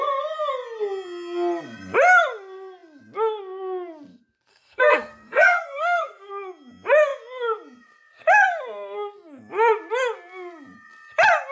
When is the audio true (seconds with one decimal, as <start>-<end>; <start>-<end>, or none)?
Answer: 0.0-4.5; 6.3-11.5